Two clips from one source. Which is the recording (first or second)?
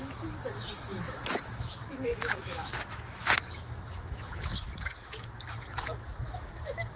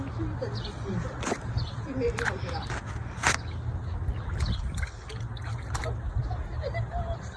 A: second